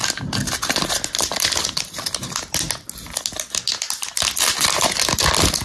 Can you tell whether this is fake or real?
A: real